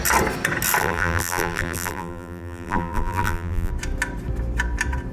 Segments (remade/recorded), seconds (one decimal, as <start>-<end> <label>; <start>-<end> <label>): 0.0-0.8 recorded; 0.8-3.7 remade; 3.7-5.1 recorded